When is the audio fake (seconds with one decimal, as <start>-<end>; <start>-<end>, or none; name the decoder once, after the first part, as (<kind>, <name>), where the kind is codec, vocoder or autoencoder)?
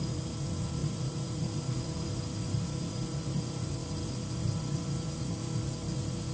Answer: 0.8-3.4 (vocoder, BigVGAN v2)